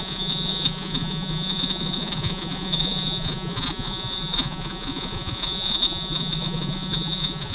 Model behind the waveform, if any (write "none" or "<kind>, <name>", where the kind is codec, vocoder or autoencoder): vocoder, Vocos